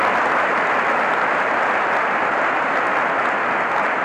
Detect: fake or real real